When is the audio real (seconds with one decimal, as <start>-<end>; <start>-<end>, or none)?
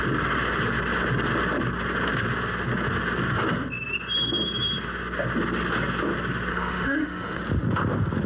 0.0-6.5; 7.4-8.3